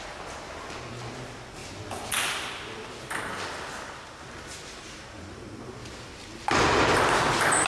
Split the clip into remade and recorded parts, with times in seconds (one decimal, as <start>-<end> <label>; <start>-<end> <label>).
0.0-1.6 recorded; 1.6-3.1 remade; 3.1-5.8 recorded; 5.8-6.6 remade; 6.6-7.7 recorded